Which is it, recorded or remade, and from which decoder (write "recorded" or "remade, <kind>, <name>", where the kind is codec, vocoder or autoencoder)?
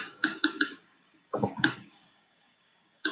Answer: remade, codec, DAC